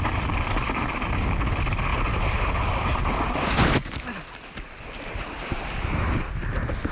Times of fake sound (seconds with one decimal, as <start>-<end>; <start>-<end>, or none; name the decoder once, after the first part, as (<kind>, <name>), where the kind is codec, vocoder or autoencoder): none